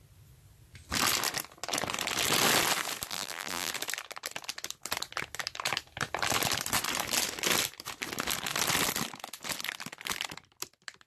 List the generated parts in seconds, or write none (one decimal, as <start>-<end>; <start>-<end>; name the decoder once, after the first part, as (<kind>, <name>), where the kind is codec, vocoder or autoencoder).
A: 3.1-3.7 (vocoder, BigVGAN v2)